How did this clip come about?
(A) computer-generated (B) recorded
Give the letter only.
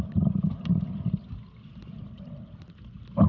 B